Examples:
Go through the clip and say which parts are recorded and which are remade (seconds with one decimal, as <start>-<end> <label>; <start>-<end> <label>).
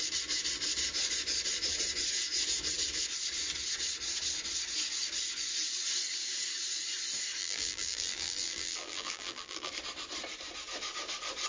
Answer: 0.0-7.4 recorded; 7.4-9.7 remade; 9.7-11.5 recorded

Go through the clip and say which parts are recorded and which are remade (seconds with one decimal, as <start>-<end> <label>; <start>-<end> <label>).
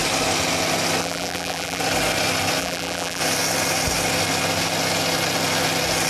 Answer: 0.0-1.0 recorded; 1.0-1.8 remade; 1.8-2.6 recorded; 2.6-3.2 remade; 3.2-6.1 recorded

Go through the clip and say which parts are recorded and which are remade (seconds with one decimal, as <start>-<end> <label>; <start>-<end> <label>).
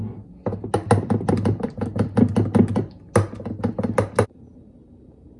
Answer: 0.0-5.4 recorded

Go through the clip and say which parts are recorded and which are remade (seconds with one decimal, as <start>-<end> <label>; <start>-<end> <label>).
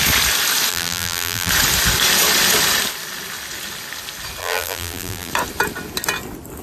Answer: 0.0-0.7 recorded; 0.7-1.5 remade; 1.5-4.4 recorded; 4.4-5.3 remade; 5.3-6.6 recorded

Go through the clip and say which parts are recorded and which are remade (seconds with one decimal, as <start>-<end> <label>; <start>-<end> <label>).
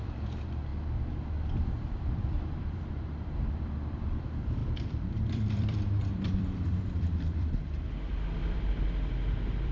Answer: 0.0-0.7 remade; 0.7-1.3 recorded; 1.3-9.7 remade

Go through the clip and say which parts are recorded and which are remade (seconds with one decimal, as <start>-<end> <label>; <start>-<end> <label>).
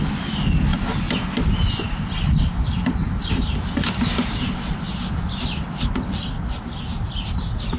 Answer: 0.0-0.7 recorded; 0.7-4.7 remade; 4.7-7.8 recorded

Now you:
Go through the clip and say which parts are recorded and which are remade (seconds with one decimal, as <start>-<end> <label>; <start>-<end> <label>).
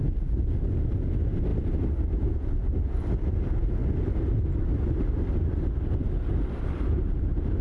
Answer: 0.0-7.6 recorded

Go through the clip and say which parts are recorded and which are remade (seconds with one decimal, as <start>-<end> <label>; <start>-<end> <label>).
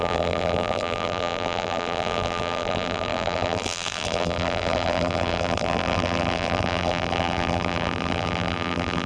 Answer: 0.0-9.1 remade